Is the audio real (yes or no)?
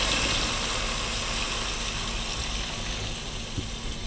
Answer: yes